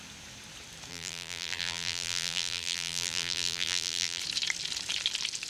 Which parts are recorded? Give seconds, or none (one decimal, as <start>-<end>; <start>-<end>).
0.0-0.9; 4.2-5.5